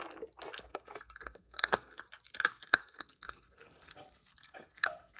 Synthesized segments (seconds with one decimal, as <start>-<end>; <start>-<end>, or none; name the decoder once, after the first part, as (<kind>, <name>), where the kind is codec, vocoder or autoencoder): 0.7-2.0 (codec, SNAC); 2.5-5.2